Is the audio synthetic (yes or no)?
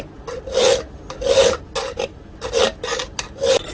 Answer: no